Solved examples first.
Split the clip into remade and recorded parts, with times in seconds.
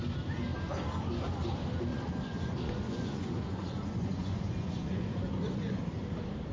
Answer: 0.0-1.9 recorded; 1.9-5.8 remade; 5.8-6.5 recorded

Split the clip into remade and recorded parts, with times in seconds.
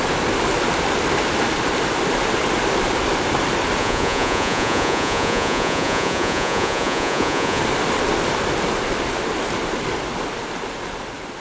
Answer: 0.0-3.8 recorded; 3.8-7.6 remade; 7.6-11.4 recorded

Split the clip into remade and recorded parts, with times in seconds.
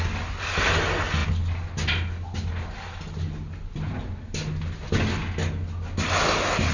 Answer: 0.0-6.7 recorded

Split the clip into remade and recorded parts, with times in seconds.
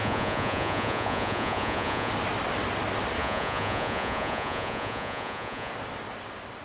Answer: 0.0-2.1 remade; 2.1-3.2 recorded; 3.2-5.7 remade; 5.7-6.6 recorded